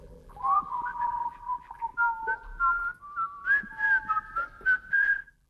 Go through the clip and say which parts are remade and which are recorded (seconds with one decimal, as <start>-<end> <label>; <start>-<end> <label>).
0.0-1.9 remade; 1.9-4.9 recorded; 4.9-5.5 remade